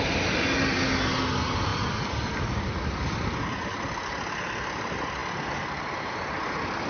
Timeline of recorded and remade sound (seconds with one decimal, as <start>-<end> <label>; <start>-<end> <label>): 0.0-6.9 recorded